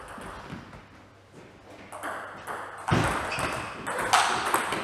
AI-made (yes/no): no